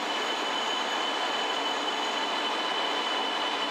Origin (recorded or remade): recorded